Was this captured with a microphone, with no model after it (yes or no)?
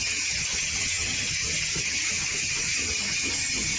no